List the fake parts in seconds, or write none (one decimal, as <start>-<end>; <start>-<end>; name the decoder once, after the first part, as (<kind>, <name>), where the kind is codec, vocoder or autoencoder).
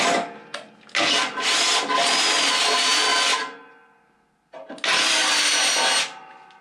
none